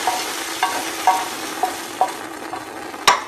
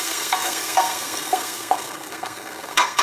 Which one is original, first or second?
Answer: first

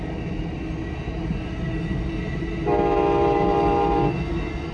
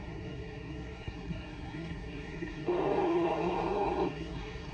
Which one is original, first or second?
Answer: first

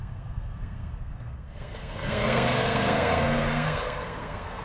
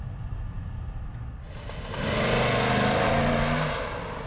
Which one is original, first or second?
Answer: second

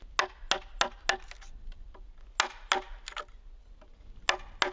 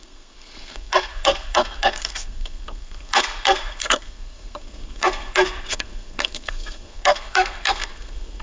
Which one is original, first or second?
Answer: first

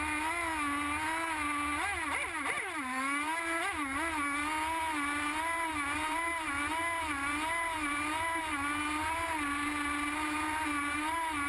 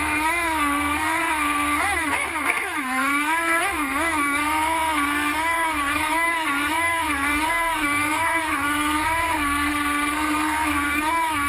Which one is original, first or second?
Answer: first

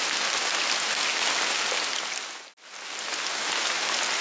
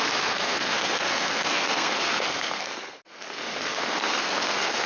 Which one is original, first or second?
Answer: first